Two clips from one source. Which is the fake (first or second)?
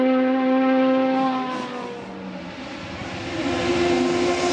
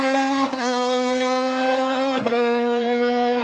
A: second